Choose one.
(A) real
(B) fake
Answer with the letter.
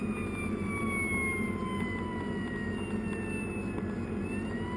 A